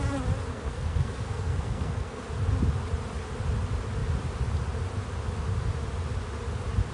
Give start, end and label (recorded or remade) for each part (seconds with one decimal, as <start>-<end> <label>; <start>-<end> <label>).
0.0-0.5 recorded; 0.5-2.2 remade; 2.2-6.9 recorded